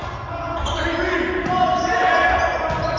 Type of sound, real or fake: real